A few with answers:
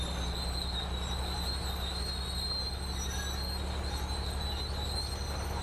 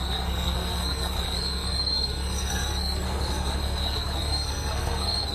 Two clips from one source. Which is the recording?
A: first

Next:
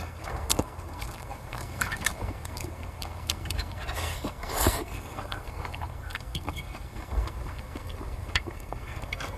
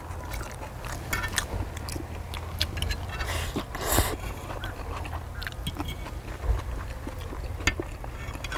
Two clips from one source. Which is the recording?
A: second